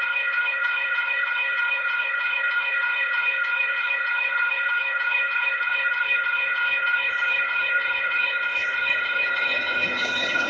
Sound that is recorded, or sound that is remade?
remade